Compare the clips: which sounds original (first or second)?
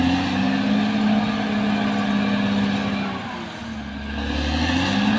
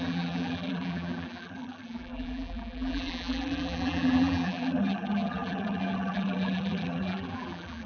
first